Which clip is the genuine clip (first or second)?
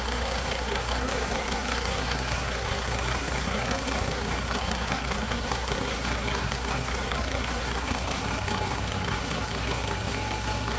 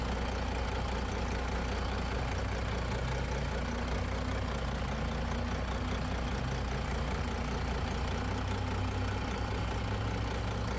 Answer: second